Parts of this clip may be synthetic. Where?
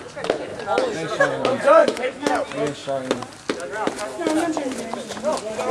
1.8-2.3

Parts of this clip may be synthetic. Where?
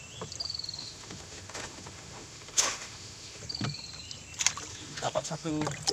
0.8-3.4; 4.7-5.5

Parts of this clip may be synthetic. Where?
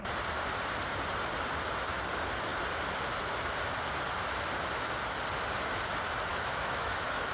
6.3-7.3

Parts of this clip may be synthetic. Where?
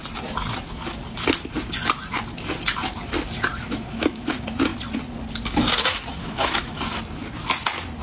3.5-4.3; 6.2-6.8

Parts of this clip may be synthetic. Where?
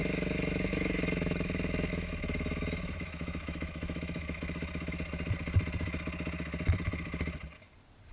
0.0-4.9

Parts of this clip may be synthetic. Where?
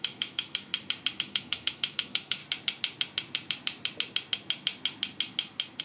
0.0-0.7; 1.2-2.4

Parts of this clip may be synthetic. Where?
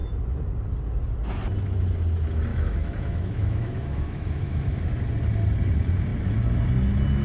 2.5-4.8